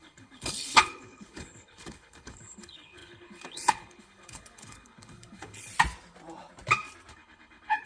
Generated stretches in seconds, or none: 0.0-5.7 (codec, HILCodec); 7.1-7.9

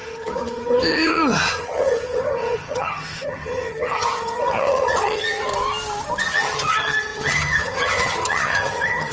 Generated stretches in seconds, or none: 0.0-5.5 (vocoder, HiFi-GAN); 6.2-9.1

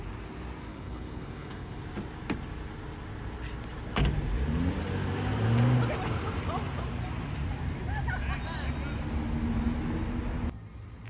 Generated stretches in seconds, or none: 0.7-1.8 (codec, HILCodec)

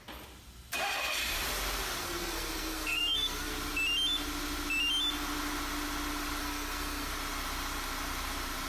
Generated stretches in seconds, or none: 2.0-3.5 (codec, SNAC); 6.4-7.1

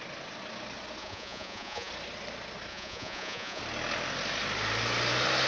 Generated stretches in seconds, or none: 1.0-1.9 (vocoder, Vocos); 2.7-3.6

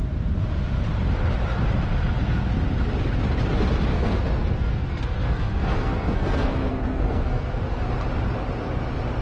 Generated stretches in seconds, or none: 3.9-7.8 (codec, SNAC)

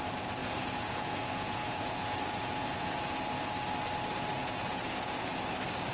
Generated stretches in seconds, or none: 0.4-3.2 (vocoder, Vocos); 4.4-5.4

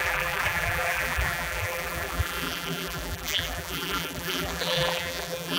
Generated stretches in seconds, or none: 0.0-5.6 (vocoder, BigVGAN v2)